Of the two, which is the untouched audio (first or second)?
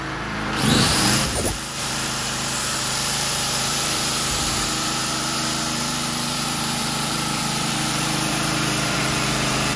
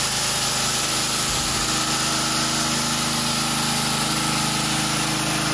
second